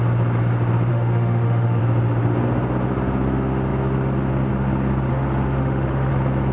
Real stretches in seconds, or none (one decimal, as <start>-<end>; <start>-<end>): 0.0-0.9; 1.8-5.1; 6.1-6.5

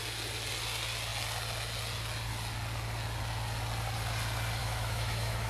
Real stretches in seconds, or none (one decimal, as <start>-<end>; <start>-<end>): 0.0-4.6

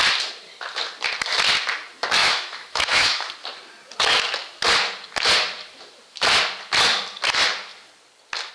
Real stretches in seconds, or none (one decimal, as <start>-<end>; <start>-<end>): 0.0-2.2; 3.3-8.5

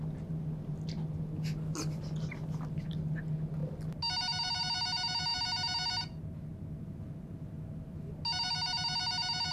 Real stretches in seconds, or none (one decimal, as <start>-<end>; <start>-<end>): 0.0-9.5

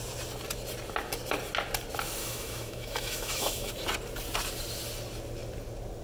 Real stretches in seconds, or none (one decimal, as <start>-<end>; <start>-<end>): 0.0-2.2; 3.7-6.0

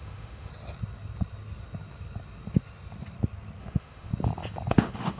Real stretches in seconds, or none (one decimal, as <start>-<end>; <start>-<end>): 0.5-3.6; 4.1-4.7

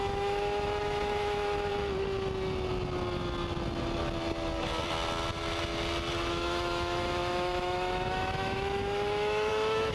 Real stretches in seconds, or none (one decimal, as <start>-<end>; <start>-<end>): 1.7-6.3

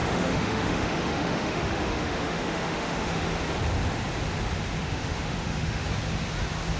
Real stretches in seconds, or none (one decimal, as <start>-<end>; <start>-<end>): 3.3-4.8; 5.9-6.8